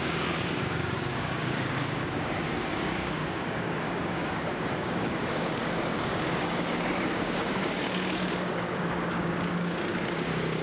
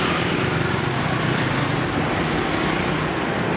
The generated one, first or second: first